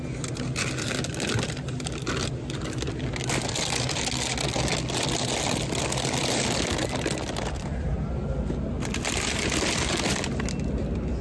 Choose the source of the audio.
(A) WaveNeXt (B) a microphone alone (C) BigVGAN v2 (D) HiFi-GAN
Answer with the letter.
B